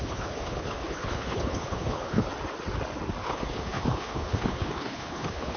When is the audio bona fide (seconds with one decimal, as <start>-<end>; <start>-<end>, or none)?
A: 2.3-3.2